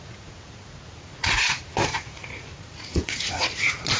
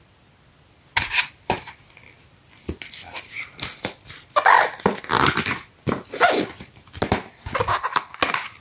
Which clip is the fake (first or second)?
first